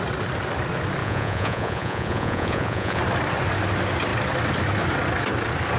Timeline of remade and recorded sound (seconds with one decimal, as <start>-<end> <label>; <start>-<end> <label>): 0.0-1.0 recorded; 1.0-3.0 remade; 3.0-5.8 recorded